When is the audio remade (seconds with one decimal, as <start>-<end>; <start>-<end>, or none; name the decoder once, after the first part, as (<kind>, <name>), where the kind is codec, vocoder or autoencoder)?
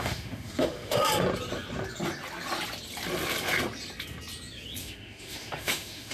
0.0-1.1 (autoencoder, DAC-VAE); 4.8-6.1